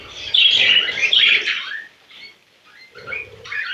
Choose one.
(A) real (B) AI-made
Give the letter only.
A